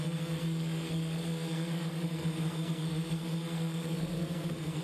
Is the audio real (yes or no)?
no